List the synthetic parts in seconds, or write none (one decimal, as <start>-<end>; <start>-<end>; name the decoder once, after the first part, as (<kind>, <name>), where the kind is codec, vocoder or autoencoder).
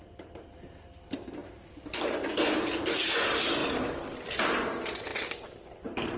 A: 0.0-3.6 (vocoder, BigVGAN v2); 4.4-6.2